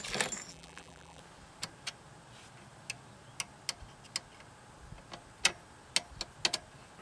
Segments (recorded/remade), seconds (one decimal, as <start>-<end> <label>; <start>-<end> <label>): 0.0-0.5 recorded; 0.5-1.2 remade; 1.2-7.0 recorded